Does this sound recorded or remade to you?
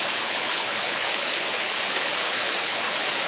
remade